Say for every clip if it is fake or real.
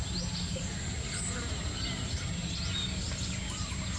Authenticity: real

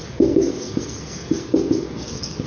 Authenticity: fake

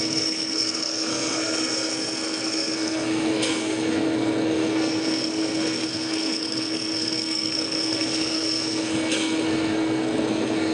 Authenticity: fake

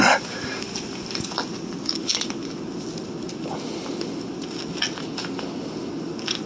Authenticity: real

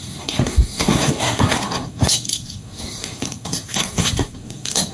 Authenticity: fake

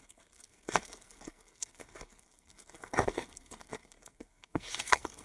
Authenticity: fake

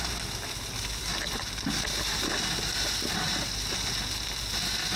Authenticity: real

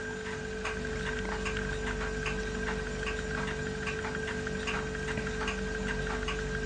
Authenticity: real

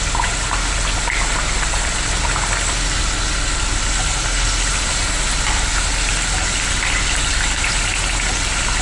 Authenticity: real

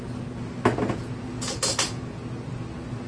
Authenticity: real